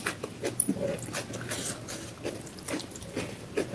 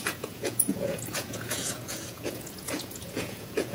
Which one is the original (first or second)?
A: first